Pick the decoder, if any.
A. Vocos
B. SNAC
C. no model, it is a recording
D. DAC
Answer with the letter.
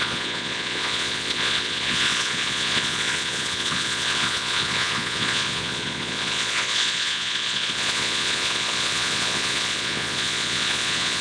A